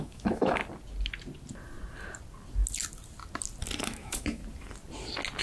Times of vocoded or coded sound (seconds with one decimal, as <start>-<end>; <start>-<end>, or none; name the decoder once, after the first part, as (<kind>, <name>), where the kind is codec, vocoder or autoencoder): 0.0-0.6 (autoencoder, DAC-VAE); 3.8-4.4